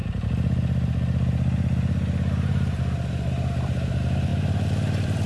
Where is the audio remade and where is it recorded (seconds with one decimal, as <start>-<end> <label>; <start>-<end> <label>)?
0.0-3.1 recorded; 3.1-5.3 remade